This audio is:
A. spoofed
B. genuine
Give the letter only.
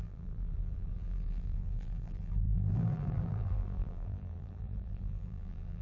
A